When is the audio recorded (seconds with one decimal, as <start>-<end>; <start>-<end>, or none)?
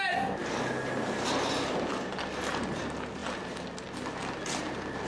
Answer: 0.0-5.1